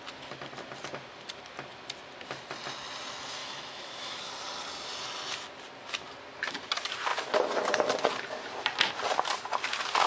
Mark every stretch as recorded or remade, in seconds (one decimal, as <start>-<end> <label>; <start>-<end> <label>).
0.0-3.4 recorded; 3.4-4.3 remade; 4.3-10.1 recorded